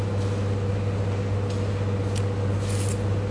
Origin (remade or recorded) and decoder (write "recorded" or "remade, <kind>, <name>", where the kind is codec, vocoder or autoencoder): recorded